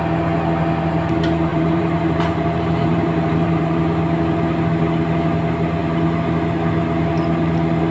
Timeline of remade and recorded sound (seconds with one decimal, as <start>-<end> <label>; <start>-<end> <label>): 0.0-1.5 recorded; 1.5-3.8 remade; 3.8-7.9 recorded